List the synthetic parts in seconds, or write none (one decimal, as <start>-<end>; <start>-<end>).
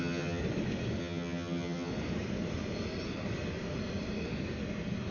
0.0-0.4; 1.0-1.9